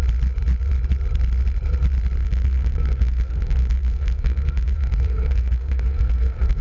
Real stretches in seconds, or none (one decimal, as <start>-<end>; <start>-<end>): 0.0-2.2